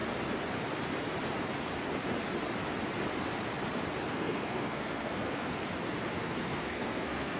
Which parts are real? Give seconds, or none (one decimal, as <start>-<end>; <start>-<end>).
0.0-4.1; 5.6-6.2